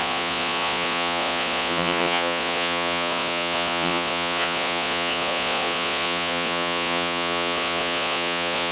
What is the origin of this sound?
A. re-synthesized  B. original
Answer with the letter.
A